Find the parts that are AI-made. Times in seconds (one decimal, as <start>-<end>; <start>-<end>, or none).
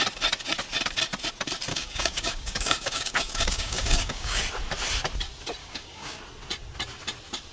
1.7-4.4; 5.6-6.2